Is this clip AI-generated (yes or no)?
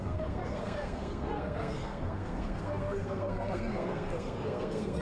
yes